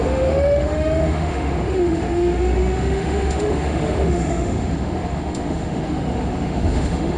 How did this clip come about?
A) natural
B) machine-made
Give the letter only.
B